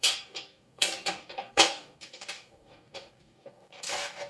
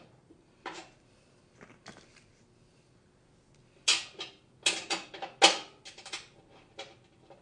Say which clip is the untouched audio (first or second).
second